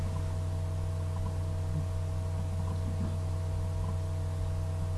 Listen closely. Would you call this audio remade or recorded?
recorded